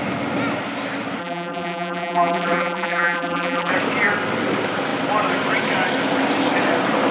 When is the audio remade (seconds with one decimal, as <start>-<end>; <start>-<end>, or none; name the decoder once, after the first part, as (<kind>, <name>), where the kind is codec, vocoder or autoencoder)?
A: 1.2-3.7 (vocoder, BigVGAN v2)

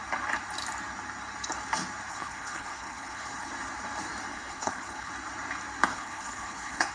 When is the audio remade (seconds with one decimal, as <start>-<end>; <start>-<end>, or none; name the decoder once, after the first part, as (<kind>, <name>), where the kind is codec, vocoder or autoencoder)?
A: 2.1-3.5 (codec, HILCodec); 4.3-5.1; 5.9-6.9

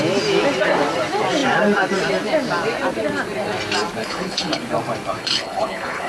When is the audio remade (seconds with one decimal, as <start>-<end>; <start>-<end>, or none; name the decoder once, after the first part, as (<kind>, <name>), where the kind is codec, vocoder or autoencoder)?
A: 4.0-4.6 (codec, HILCodec); 5.2-6.1

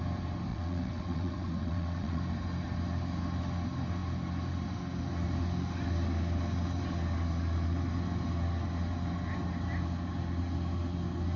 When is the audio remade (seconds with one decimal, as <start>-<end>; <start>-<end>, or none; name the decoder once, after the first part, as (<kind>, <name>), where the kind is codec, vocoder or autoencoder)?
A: 0.5-2.2 (vocoder, WaveNeXt)

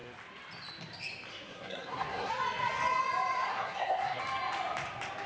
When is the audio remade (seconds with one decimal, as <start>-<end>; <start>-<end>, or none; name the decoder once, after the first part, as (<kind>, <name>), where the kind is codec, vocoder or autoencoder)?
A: 1.3-2.3 (codec, SNAC); 3.5-4.2